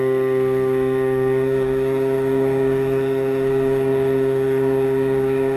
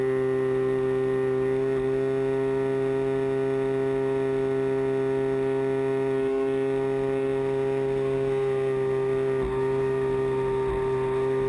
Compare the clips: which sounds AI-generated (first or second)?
first